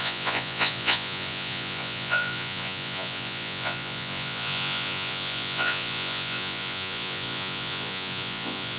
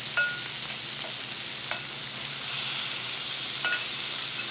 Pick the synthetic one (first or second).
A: first